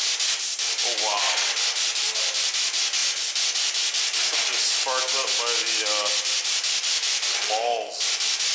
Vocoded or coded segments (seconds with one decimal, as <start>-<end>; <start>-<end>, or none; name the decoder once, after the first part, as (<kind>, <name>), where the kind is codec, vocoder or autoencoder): none